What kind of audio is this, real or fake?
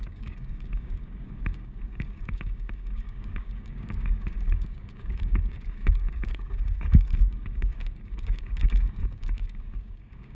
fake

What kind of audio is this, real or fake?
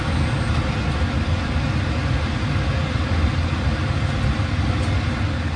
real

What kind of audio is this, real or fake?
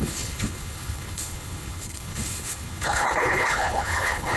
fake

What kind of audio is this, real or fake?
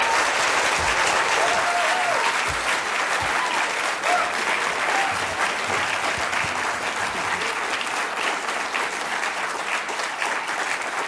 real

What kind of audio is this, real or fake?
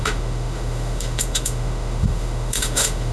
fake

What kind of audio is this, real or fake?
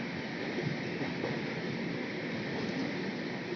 real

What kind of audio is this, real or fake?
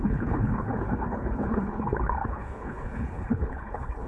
fake